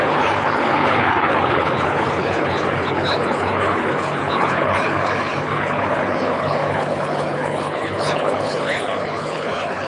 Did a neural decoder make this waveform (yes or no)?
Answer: yes